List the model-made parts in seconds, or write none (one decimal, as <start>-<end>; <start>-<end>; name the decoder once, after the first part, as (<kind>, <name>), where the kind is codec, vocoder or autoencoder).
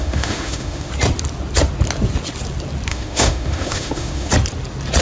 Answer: 0.0-0.9 (autoencoder, DAC-VAE); 2.9-4.3